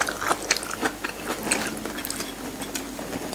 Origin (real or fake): real